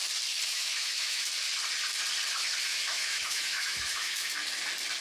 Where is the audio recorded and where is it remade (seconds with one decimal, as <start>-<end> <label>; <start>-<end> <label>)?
0.0-0.5 recorded; 0.5-1.3 remade; 1.3-2.7 recorded; 2.7-4.3 remade; 4.3-5.0 recorded